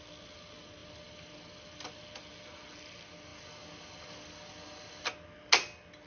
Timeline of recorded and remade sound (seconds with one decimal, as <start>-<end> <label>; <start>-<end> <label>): 0.0-6.1 recorded